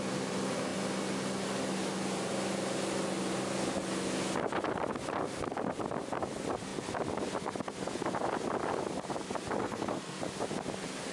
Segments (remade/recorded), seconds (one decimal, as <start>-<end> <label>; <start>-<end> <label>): 0.0-9.6 recorded; 9.6-10.2 remade; 10.2-11.1 recorded